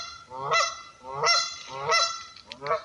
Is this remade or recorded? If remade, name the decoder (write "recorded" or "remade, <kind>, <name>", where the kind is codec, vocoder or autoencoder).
recorded